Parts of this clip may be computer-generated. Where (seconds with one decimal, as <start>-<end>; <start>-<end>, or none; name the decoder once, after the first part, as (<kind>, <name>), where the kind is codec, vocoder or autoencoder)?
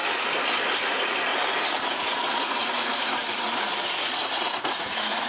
0.8-1.3 (vocoder, Vocos); 1.8-5.3